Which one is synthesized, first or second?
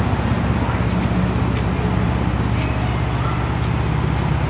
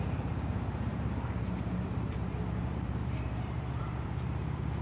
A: second